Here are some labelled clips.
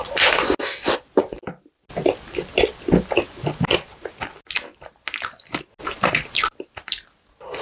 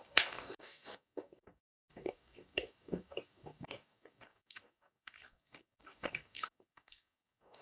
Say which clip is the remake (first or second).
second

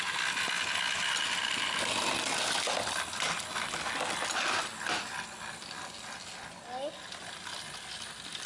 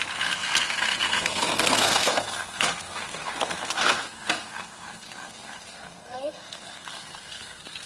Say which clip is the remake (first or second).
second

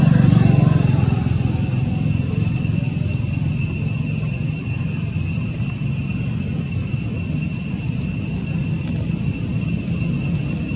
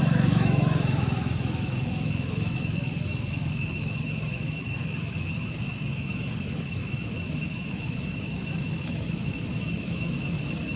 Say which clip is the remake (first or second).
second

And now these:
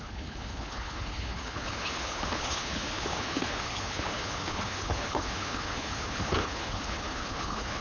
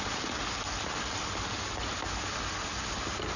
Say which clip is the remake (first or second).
first